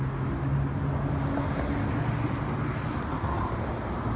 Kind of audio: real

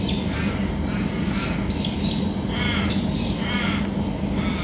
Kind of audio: real